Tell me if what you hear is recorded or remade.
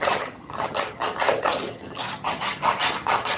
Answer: remade